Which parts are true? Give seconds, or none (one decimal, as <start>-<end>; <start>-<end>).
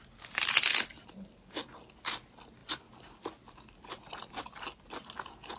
0.0-5.6